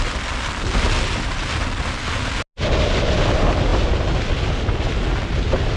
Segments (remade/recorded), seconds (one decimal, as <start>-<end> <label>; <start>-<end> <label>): 0.0-5.8 recorded